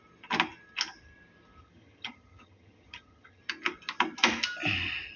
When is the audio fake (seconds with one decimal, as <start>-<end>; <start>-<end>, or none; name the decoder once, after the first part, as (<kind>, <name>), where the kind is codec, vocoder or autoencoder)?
1.6-3.4 (vocoder, HiFi-GAN)